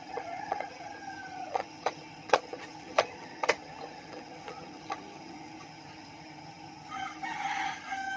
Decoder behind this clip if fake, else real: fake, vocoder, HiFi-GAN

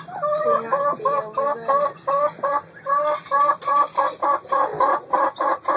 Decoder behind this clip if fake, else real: real